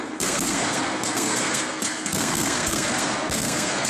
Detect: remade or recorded remade